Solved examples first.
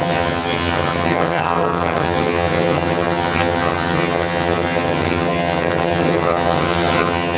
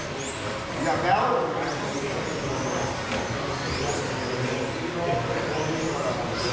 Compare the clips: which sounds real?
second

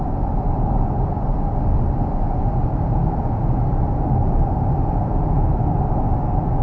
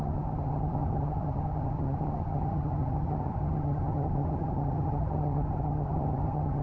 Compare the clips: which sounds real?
first